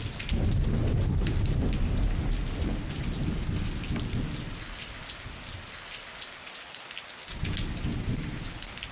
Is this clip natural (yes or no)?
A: yes